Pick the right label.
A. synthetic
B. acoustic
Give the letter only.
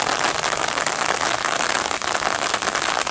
B